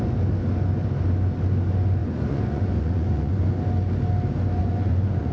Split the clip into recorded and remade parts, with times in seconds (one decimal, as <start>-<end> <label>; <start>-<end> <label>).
0.0-2.0 recorded; 2.0-3.6 remade; 3.6-4.6 recorded; 4.6-5.3 remade